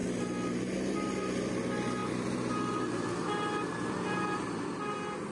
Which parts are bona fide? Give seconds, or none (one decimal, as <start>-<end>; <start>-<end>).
0.0-5.3